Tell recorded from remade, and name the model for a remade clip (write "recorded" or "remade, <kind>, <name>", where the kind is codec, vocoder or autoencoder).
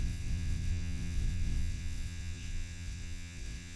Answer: remade, vocoder, WaveNeXt